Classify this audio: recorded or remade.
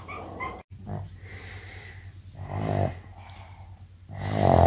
recorded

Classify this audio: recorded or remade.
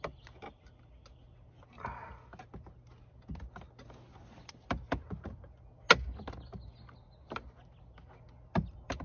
recorded